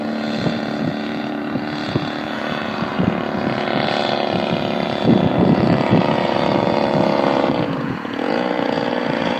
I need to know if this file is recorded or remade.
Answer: remade